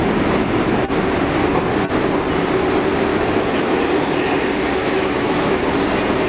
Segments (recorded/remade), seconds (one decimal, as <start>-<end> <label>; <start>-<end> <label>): 0.0-3.1 recorded; 3.1-3.8 remade; 3.8-4.8 recorded; 4.8-5.6 remade; 5.6-6.3 recorded